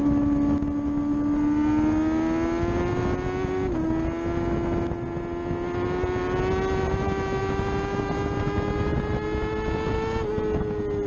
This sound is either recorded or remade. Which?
recorded